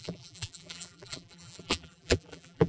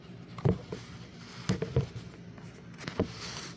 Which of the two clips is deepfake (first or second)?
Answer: first